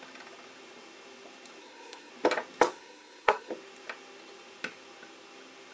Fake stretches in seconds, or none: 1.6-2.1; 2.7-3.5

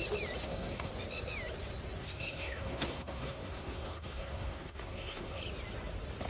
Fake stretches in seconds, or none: 0.4-0.9; 2.0-5.4

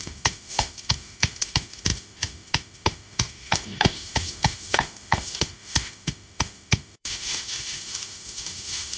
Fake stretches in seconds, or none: 0.0-9.0

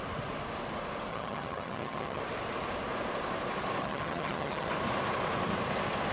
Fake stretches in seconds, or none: 1.1-2.2; 3.8-4.7